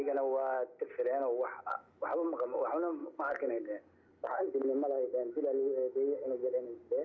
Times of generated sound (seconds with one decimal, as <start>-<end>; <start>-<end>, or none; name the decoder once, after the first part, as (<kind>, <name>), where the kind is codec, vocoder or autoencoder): 3.0-4.4 (codec, DAC)